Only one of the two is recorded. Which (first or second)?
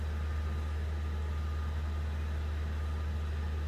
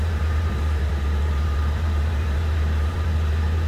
first